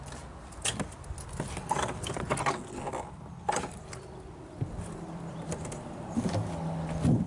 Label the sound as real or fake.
real